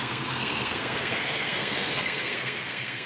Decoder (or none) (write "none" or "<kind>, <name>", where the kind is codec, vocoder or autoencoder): codec, SNAC